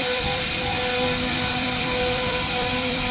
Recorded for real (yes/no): no